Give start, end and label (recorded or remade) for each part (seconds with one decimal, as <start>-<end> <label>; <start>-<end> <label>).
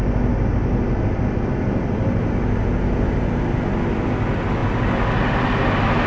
0.0-6.1 recorded